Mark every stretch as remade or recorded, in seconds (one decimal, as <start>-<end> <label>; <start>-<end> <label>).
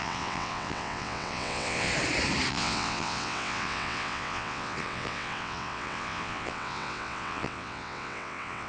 0.0-1.9 remade; 1.9-2.5 recorded; 2.5-8.7 remade